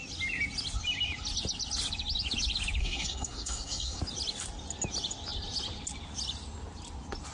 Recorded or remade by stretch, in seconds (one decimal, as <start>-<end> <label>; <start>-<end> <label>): 0.0-2.8 recorded; 2.8-4.0 remade; 4.0-7.3 recorded